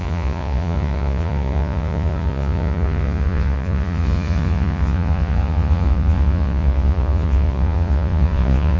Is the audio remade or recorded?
remade